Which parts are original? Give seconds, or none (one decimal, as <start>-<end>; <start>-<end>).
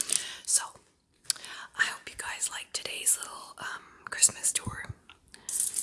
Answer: 0.0-5.8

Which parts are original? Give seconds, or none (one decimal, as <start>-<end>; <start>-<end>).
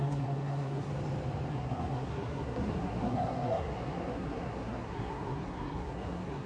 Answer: 0.9-1.5